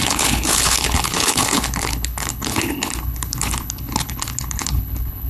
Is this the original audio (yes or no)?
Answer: no